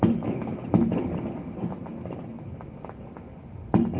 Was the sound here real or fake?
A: real